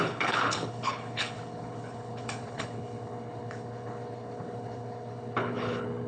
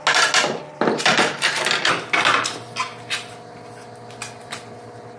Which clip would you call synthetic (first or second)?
first